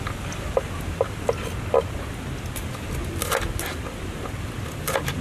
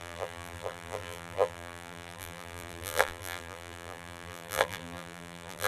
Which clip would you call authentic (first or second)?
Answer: first